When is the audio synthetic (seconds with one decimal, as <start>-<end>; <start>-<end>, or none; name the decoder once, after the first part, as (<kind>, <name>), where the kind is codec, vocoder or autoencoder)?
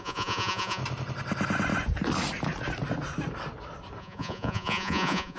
0.0-0.8 (vocoder, Vocos); 4.0-5.4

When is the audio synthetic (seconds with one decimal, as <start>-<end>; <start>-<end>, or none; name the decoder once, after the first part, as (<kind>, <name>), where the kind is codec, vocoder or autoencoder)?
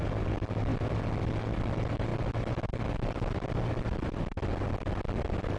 none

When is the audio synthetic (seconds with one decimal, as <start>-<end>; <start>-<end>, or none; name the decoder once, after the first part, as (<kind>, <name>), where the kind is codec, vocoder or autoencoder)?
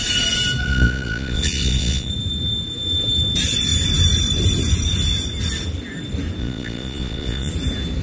0.6-2.1 (vocoder, Vocos); 6.4-7.5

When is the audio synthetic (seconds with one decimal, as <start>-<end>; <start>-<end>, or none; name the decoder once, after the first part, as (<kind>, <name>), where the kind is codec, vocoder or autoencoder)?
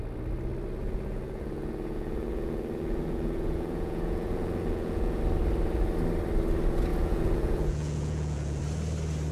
0.8-5.2 (vocoder, Vocos); 6.9-8.6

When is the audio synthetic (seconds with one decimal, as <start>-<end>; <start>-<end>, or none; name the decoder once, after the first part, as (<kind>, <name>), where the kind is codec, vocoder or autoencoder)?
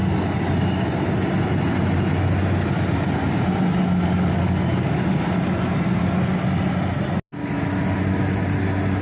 none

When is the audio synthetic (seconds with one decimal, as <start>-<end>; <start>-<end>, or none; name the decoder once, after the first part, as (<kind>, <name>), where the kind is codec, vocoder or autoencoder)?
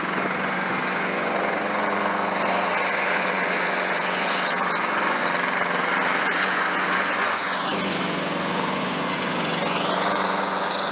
0.0-5.2 (vocoder, Vocos); 6.2-10.9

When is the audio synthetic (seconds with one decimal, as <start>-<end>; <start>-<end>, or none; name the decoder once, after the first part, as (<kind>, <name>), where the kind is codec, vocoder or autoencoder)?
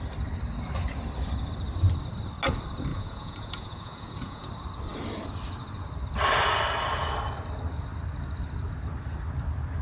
2.9-4.5 (vocoder, Vocos)